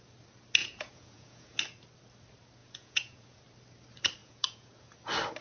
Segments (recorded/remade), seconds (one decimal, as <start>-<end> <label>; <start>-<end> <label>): 0.0-0.6 recorded; 0.6-1.6 remade; 1.6-2.6 recorded; 2.6-3.4 remade; 3.4-4.2 recorded; 4.2-4.7 remade; 4.7-5.4 recorded